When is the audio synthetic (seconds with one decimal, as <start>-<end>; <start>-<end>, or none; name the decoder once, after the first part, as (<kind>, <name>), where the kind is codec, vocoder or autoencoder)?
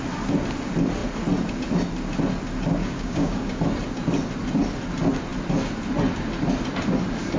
2.8-3.6 (codec, DAC)